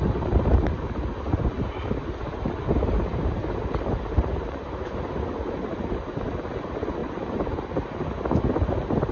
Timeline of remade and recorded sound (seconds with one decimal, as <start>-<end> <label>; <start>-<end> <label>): 0.0-9.1 recorded